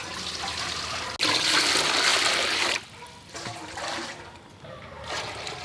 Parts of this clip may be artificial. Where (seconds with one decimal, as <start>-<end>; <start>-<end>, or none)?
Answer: none